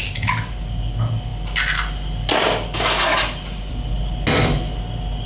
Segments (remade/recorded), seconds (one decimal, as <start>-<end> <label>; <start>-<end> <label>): 0.0-5.3 recorded